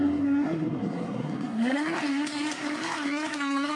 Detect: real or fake fake